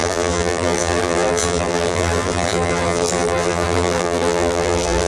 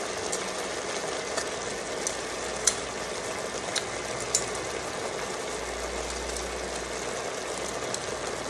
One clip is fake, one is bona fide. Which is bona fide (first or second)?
second